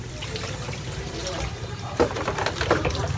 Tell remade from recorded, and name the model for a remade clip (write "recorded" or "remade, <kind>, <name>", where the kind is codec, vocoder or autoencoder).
remade, vocoder, BigVGAN v2